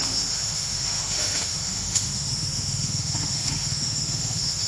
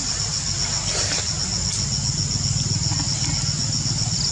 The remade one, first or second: first